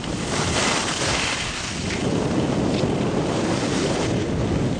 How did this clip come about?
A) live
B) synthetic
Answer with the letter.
A